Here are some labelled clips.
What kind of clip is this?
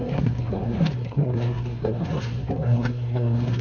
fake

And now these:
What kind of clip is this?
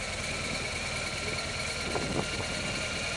real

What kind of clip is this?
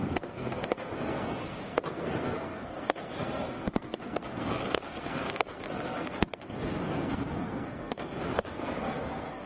fake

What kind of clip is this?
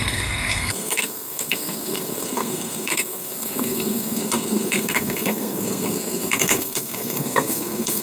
fake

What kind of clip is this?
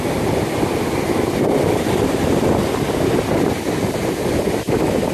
real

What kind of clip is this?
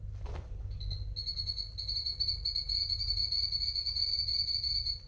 real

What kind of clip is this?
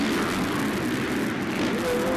real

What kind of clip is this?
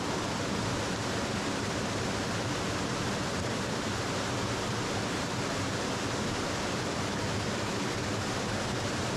real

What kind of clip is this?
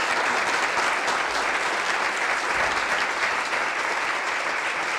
real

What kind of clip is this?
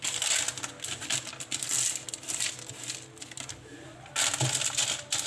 real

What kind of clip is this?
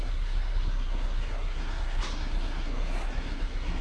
fake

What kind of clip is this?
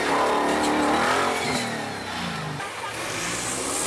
real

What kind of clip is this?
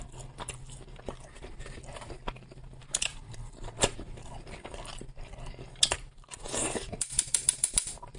real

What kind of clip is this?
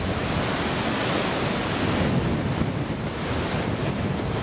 real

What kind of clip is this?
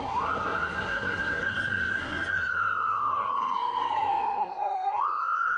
fake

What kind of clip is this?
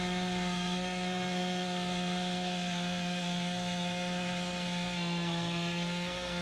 fake